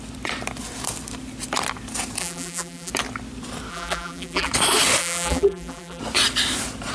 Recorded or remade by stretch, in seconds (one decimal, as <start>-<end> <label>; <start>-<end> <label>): 0.0-2.2 recorded; 2.2-2.9 remade; 2.9-3.7 recorded; 3.7-4.5 remade; 4.5-5.0 recorded; 5.0-6.0 remade; 6.0-6.9 recorded